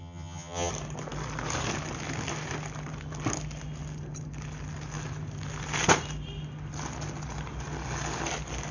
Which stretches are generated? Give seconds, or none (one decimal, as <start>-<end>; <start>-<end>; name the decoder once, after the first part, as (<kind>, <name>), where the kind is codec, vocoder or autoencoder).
0.0-0.7 (vocoder, HiFi-GAN)